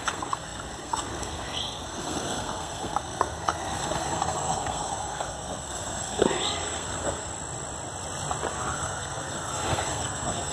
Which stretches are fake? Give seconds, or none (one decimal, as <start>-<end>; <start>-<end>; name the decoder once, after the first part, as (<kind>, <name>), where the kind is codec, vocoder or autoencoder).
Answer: 0.0-7.3 (codec, SNAC); 8.5-10.5